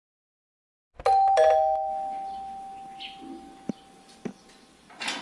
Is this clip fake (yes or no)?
no